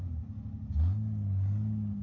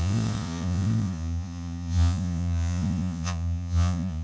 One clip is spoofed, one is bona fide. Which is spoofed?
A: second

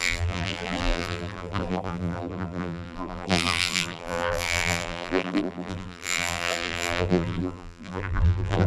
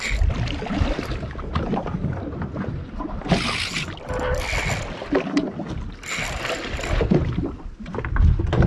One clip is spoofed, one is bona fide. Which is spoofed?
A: first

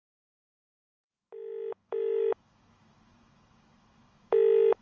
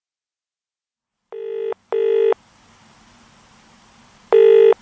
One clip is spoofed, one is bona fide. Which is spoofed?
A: first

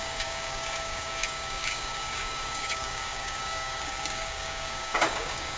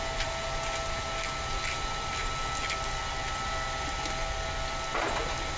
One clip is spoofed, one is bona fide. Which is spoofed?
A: first